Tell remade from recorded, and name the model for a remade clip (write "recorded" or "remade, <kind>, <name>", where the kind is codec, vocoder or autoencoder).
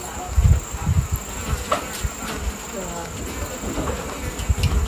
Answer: recorded